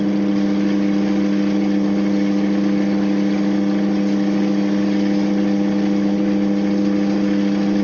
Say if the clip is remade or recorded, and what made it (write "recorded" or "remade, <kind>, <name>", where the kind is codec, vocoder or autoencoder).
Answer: recorded